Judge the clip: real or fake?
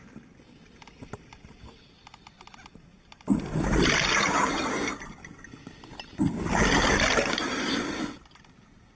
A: real